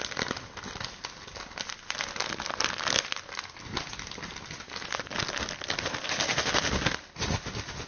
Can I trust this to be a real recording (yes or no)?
yes